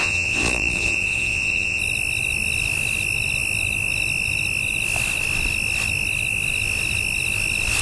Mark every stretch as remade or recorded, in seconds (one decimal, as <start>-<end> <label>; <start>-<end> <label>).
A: 0.0-1.8 remade; 1.8-7.8 recorded